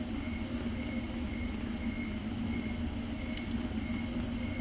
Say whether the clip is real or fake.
real